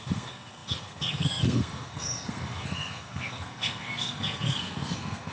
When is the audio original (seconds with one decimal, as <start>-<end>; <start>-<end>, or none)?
none

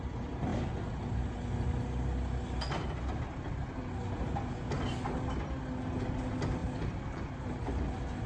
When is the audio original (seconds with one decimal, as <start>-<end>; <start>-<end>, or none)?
0.0-6.6; 7.7-8.3

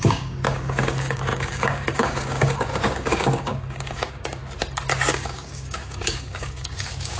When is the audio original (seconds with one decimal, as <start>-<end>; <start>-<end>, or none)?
4.4-5.1

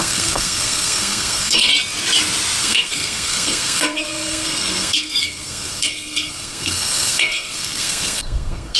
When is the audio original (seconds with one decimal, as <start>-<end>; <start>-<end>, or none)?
1.7-2.6

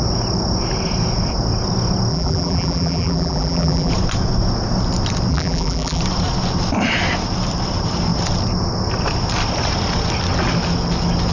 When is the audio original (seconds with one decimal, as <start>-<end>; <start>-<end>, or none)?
0.0-2.1; 3.9-5.3; 6.0-11.3